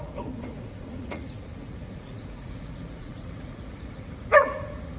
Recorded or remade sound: remade